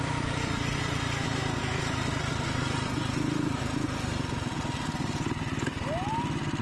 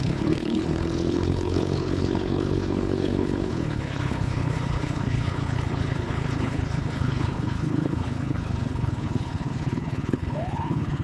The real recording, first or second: first